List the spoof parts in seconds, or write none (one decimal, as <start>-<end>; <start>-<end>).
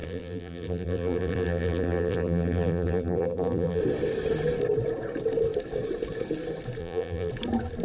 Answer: 0.0-3.8; 6.8-7.3